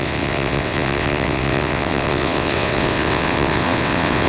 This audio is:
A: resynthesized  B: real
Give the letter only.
A